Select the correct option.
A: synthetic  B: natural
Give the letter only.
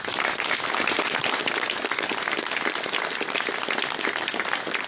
B